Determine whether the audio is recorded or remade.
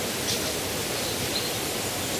recorded